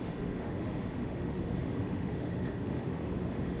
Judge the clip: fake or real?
fake